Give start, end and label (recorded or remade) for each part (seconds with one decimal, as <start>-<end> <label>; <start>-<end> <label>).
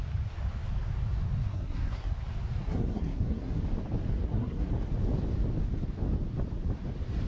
0.0-1.5 recorded; 1.5-2.1 remade; 2.1-2.6 recorded; 2.6-3.6 remade; 3.6-4.2 recorded; 4.2-4.7 remade; 4.7-7.3 recorded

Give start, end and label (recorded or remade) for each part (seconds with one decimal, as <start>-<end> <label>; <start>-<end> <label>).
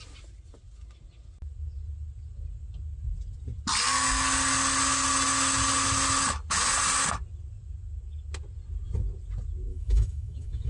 0.0-9.7 recorded; 9.7-10.7 remade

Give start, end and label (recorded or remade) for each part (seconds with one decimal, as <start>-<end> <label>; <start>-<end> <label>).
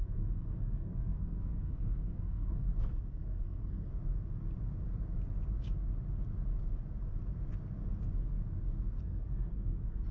0.0-2.7 remade; 2.7-3.2 recorded; 3.2-3.9 remade; 3.9-9.0 recorded; 9.0-10.1 remade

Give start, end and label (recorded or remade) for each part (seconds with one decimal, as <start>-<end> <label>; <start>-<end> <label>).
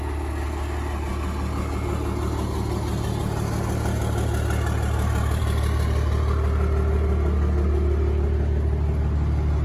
0.0-9.6 recorded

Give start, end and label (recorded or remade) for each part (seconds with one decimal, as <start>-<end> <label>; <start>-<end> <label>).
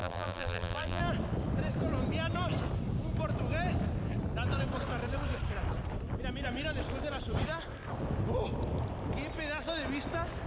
0.0-1.0 remade; 1.0-10.5 recorded